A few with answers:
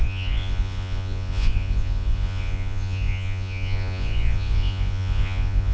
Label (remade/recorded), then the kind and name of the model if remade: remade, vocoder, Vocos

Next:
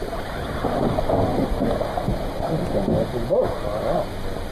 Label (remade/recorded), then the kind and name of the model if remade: recorded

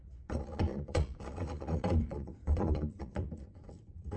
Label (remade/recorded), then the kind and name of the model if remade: remade, vocoder, Vocos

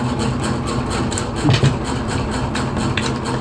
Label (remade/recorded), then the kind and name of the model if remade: recorded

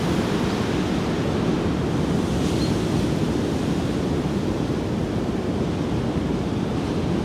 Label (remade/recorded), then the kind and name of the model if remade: recorded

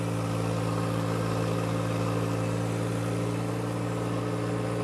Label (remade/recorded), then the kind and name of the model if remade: recorded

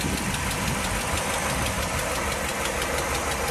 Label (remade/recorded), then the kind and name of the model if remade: recorded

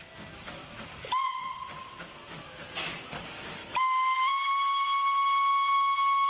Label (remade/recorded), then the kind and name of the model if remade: recorded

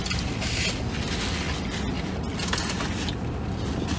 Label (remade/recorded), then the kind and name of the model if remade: recorded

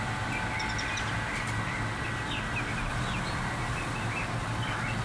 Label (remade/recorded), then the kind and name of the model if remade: recorded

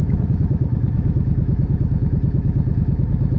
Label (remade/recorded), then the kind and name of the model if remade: remade, autoencoder, DAC-VAE